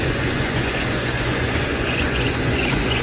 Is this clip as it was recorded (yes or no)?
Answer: no